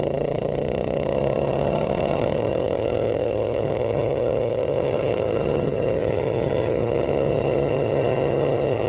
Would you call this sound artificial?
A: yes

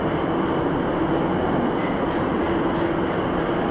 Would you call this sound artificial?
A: no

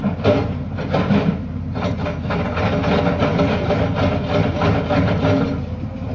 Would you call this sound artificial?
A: no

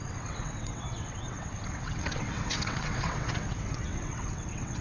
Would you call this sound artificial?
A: yes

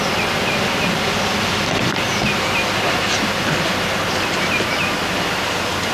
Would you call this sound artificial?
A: no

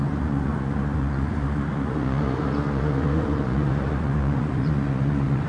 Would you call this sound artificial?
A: yes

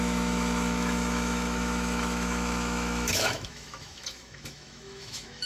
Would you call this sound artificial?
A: yes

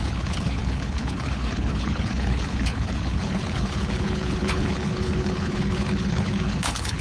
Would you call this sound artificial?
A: yes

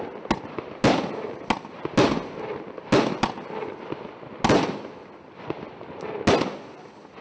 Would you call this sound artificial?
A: no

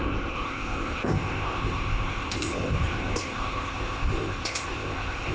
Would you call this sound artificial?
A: yes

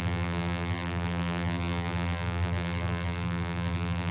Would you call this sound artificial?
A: yes